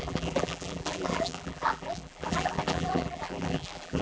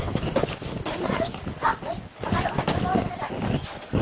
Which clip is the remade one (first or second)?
first